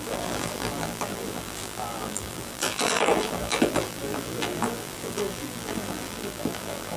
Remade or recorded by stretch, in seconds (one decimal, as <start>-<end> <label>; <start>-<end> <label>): 0.0-7.0 remade